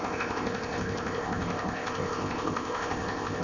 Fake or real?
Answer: fake